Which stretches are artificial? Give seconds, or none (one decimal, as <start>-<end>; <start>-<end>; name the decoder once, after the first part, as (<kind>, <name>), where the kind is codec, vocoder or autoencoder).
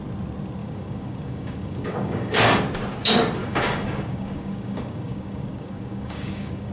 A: 0.6-2.5 (codec, DAC); 3.4-6.7